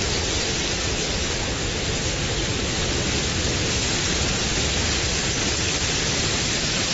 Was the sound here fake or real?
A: real